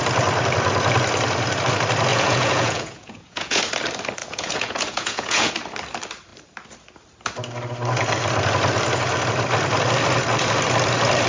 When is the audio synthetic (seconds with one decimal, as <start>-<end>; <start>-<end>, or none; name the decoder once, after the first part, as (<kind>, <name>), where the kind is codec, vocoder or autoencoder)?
2.1-3.6 (vocoder, Vocos); 4.2-5.5